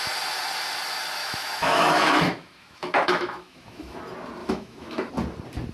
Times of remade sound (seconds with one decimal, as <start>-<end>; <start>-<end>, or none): 1.2-4.0; 4.4-5.1